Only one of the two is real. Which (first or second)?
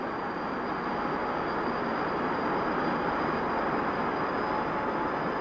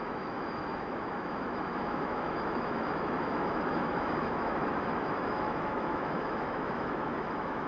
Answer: first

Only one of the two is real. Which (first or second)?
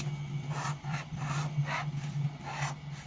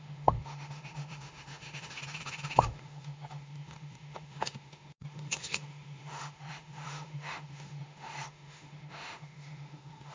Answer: first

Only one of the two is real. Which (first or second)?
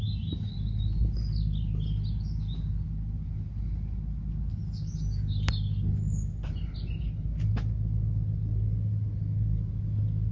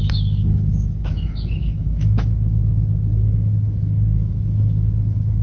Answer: first